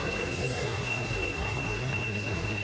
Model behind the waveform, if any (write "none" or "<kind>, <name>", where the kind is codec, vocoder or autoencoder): codec, SNAC